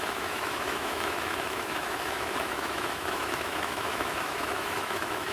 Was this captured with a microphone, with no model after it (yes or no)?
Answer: no